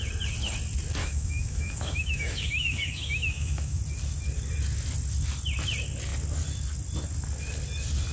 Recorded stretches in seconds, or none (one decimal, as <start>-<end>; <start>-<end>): 0.0-1.0; 3.8-8.1

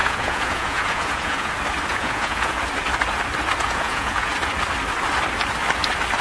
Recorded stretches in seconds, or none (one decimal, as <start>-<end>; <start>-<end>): 1.5-1.9; 2.6-3.6; 4.3-6.2

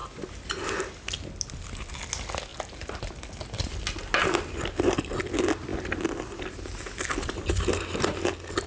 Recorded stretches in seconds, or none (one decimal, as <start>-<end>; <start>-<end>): 0.0-8.7